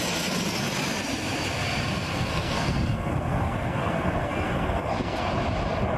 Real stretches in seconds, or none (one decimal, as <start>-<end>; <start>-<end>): 0.0-2.1; 5.3-6.0